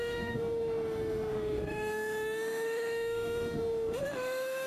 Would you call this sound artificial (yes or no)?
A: yes